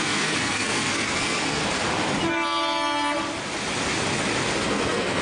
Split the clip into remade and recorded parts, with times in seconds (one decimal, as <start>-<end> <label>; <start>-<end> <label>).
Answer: 0.0-1.6 remade; 1.6-4.7 recorded; 4.7-5.2 remade